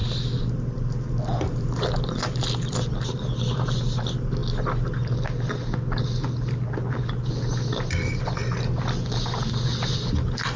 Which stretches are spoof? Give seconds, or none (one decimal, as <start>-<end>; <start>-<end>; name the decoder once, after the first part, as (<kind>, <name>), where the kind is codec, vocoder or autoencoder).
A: none